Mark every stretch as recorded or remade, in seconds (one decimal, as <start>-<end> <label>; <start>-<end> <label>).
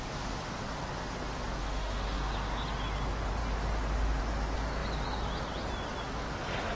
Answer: 0.0-1.6 recorded; 1.6-2.3 remade; 2.3-6.7 recorded